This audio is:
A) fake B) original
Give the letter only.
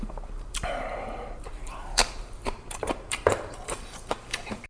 A